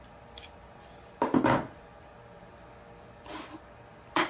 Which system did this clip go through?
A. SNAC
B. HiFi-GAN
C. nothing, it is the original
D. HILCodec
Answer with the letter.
C